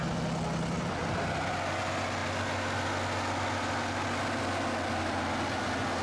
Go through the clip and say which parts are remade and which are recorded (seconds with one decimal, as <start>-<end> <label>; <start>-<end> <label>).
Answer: 0.0-6.0 recorded